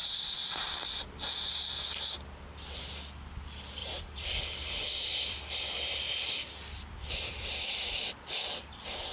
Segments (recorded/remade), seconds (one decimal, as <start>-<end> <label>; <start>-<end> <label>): 0.0-3.8 recorded; 3.8-6.8 remade; 6.8-9.1 recorded